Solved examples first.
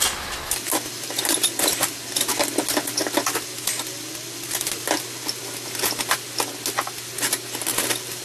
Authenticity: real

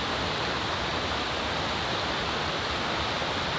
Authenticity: real